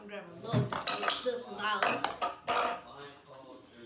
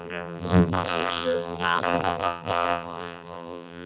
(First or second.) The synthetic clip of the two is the second